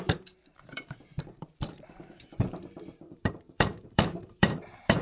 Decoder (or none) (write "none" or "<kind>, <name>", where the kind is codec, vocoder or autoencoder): vocoder, BigVGAN v2